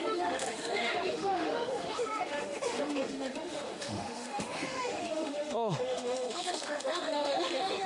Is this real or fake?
fake